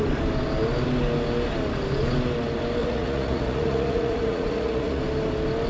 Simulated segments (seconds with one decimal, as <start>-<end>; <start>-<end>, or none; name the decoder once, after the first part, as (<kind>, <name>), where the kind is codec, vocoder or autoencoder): 2.8-5.0 (vocoder, Vocos)